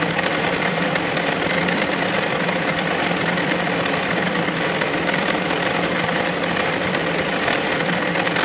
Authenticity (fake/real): fake